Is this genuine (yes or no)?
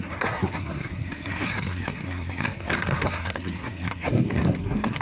no